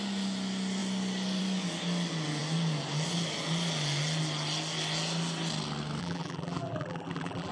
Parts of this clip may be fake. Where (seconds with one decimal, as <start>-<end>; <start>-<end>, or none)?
6.0-7.5